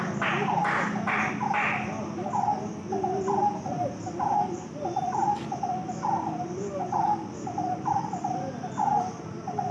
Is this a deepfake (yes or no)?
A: no